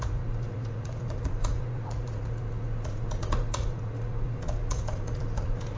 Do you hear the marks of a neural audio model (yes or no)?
yes